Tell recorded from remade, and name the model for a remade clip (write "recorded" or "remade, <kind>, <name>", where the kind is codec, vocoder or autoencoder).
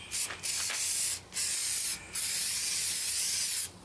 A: recorded